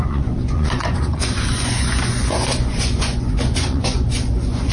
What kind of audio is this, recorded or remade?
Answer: remade